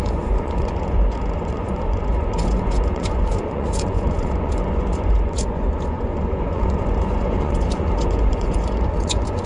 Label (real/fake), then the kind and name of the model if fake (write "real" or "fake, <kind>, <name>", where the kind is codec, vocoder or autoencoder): fake, vocoder, Vocos